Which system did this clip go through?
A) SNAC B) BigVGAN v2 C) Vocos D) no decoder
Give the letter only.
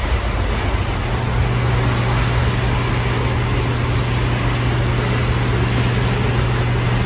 D